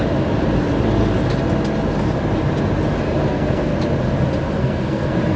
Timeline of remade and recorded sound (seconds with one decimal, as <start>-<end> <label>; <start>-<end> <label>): 0.0-3.2 recorded; 3.2-3.7 remade; 3.7-4.6 recorded; 4.6-5.4 remade